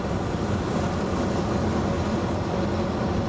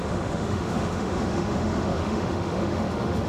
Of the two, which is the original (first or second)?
first